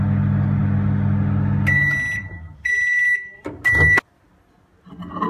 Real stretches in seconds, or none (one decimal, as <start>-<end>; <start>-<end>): 0.0-5.3